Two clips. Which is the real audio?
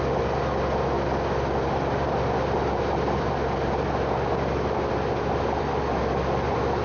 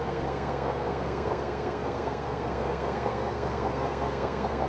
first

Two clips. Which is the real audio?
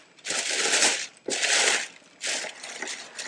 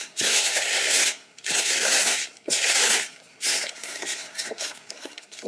first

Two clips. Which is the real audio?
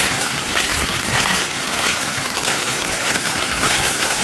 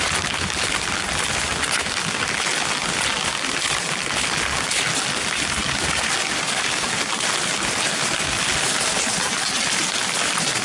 second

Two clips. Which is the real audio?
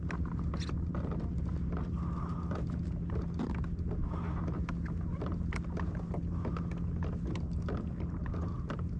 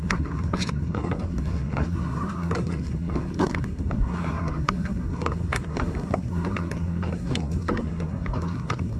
first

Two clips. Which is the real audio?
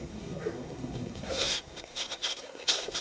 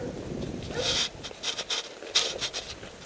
second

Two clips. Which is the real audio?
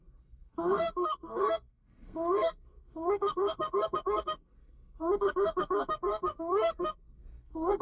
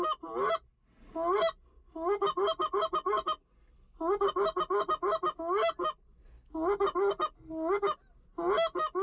second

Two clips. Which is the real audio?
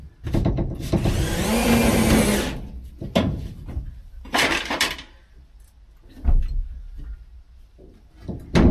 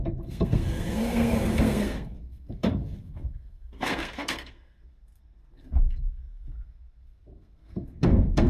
first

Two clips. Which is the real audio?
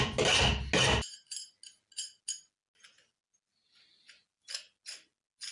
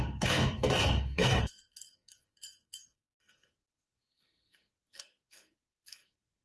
first